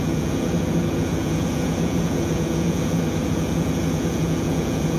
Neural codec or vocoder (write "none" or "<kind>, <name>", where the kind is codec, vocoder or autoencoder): vocoder, Vocos